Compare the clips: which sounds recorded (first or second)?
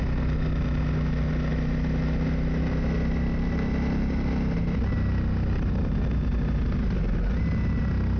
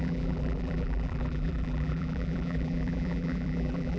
first